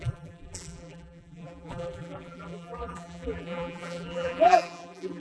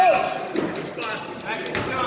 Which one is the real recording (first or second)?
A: second